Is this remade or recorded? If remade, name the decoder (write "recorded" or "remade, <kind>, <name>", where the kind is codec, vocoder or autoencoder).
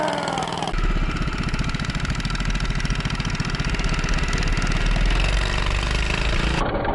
recorded